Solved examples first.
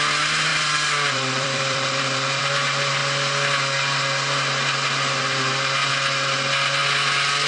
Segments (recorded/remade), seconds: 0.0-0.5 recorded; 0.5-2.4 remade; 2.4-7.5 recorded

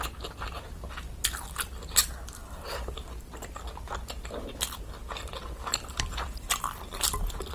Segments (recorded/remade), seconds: 0.0-2.0 recorded; 2.0-3.6 remade; 3.6-5.7 recorded; 5.7-7.5 remade

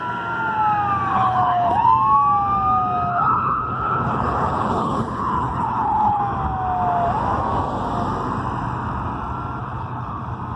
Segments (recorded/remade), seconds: 0.0-1.1 recorded; 1.1-1.7 remade; 1.7-3.1 recorded; 3.1-6.2 remade; 6.2-9.6 recorded; 9.6-10.2 remade; 10.2-10.6 recorded

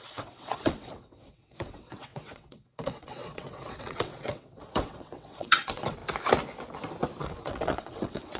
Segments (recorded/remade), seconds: 0.0-6.0 remade; 6.0-7.2 recorded; 7.2-8.4 remade

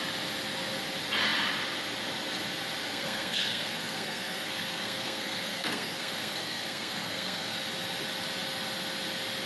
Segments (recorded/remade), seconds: 0.0-2.8 recorded; 2.8-7.6 remade; 7.6-9.5 recorded

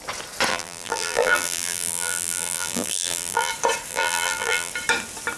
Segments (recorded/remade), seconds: 0.0-0.5 recorded; 0.5-3.5 remade; 3.5-3.9 recorded; 3.9-4.7 remade; 4.7-5.4 recorded